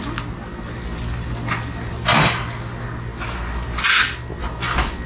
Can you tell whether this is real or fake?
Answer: real